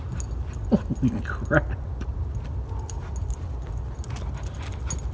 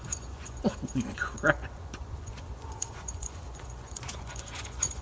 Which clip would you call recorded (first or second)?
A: first